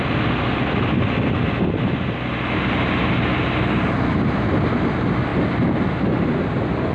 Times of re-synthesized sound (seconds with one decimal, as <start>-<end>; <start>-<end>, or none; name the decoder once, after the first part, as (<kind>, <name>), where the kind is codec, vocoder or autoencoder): none